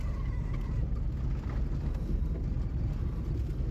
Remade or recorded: recorded